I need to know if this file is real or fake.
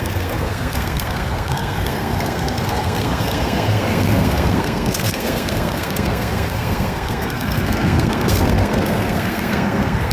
fake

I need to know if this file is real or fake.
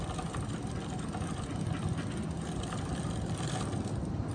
real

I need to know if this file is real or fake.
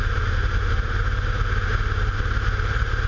fake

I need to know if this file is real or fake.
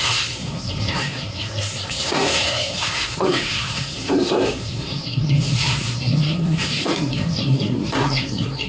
fake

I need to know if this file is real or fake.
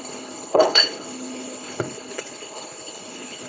fake